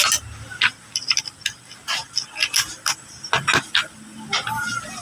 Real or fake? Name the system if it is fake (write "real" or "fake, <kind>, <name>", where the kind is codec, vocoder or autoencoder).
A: real